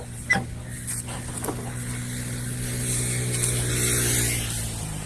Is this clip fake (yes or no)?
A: no